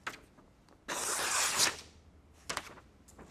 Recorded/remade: recorded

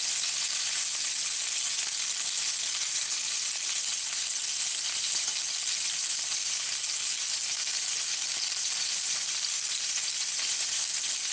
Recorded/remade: recorded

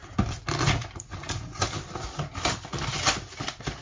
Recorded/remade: recorded